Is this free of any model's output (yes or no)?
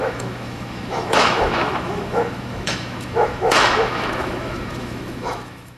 no